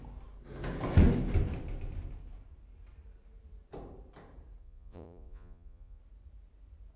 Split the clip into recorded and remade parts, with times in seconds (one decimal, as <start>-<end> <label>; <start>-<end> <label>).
0.0-4.6 recorded; 4.6-6.0 remade; 6.0-7.0 recorded